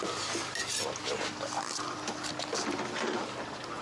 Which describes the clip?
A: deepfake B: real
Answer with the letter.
B